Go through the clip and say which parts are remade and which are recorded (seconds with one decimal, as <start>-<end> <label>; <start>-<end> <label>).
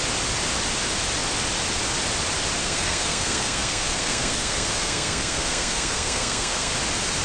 0.0-2.6 recorded; 2.6-6.7 remade; 6.7-7.2 recorded